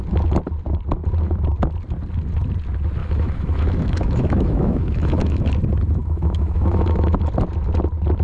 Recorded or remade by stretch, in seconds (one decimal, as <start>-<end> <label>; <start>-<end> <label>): 0.0-3.0 recorded; 3.0-5.5 remade; 5.5-6.0 recorded; 6.0-7.2 remade; 7.2-8.2 recorded